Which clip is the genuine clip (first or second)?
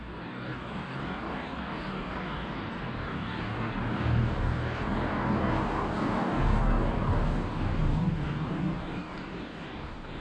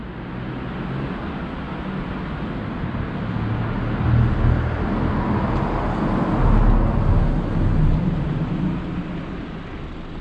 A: second